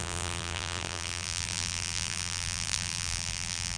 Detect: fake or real fake